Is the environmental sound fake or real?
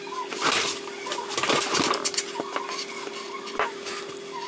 real